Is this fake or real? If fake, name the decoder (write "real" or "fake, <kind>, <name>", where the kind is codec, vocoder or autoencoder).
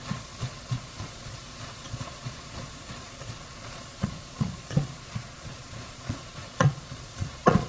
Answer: fake, vocoder, Vocos